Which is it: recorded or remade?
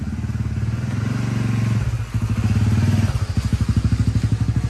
recorded